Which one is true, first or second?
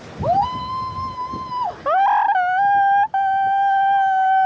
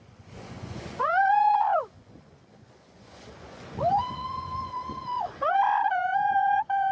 first